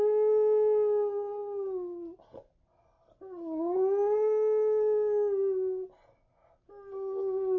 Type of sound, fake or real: real